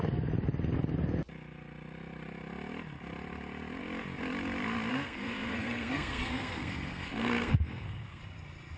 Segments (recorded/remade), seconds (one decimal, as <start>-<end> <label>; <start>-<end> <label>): 0.0-4.9 recorded; 4.9-8.2 remade; 8.2-8.8 recorded